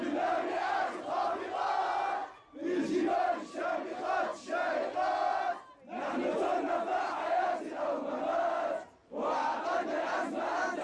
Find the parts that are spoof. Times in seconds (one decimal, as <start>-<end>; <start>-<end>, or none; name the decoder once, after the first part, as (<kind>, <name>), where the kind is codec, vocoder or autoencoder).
4.3-5.7 (vocoder, BigVGAN v2); 6.9-10.2